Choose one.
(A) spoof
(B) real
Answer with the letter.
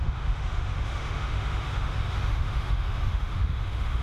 A